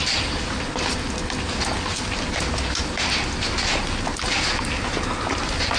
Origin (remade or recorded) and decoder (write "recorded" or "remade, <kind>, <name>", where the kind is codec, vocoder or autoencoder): recorded